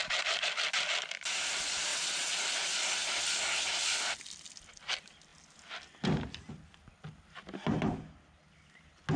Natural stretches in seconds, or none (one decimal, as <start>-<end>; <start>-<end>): 0.0-1.9; 2.4-9.2